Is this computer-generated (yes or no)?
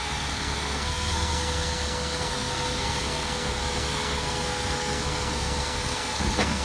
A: yes